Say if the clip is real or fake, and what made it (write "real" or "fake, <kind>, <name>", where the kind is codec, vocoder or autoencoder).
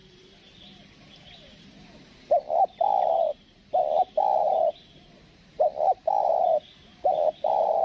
fake, vocoder, BigVGAN v2